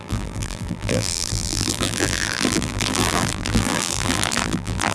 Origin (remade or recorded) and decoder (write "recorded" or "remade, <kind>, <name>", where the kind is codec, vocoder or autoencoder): remade, vocoder, BigVGAN v2